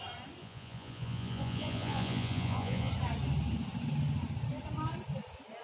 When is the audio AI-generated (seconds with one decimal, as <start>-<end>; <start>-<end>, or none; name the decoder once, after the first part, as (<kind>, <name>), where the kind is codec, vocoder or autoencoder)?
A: 0.4-2.9 (vocoder, Vocos)